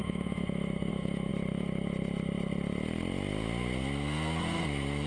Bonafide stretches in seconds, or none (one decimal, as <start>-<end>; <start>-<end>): 1.3-4.4